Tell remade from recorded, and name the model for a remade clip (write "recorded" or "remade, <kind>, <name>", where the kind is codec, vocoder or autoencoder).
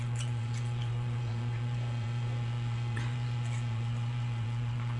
remade, vocoder, Vocos